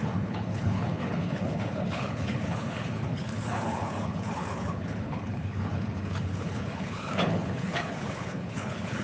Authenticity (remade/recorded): remade